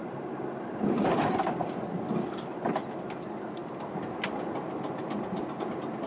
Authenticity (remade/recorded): recorded